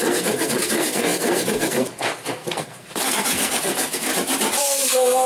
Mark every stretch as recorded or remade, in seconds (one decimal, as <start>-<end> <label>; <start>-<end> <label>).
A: 0.0-4.1 remade; 4.1-4.6 recorded; 4.6-5.3 remade